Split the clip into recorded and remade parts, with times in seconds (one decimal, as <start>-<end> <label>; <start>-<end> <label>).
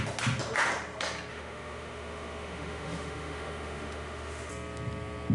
0.0-1.3 recorded; 1.3-4.5 remade; 4.5-5.3 recorded